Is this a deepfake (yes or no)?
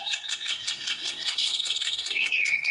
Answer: yes